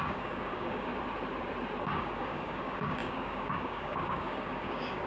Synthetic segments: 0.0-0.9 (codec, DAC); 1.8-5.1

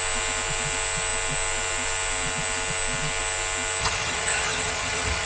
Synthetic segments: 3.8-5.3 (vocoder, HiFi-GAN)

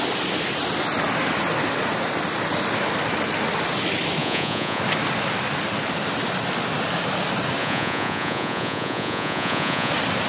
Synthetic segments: 4.2-4.8 (vocoder, Vocos); 7.6-9.9

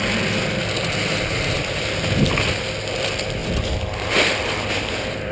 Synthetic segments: none

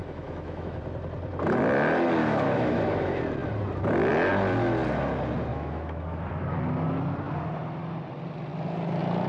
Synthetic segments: 0.0-0.8 (autoencoder, DAC-VAE); 2.2-3.2; 5.5-6.3

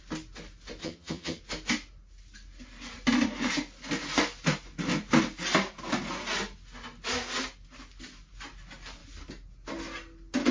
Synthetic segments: 0.8-1.4 (vocoder, HiFi-GAN)

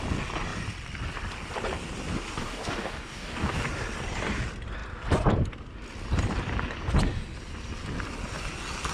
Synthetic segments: 2.4-3.7 (codec, DAC)